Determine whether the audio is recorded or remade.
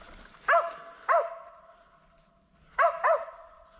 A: recorded